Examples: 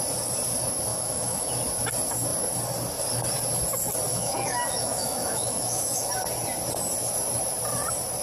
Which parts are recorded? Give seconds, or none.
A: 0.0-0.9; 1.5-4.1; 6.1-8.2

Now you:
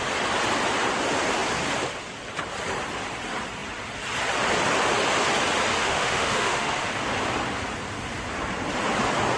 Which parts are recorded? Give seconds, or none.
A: 0.0-5.8; 6.9-9.4

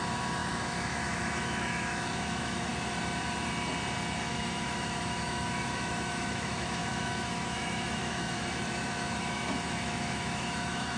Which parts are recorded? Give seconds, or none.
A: 2.7-4.3